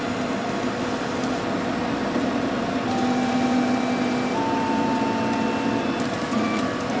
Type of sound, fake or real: real